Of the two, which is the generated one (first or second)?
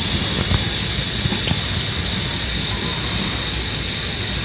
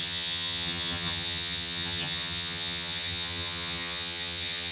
second